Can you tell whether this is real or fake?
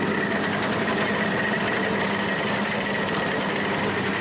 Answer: real